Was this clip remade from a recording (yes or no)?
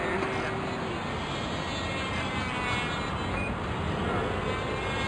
no